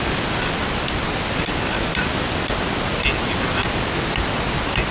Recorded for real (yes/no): yes